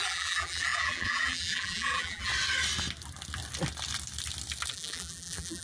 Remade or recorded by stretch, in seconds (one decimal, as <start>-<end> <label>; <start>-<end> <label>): 0.0-2.3 remade; 2.3-4.7 recorded; 4.7-5.6 remade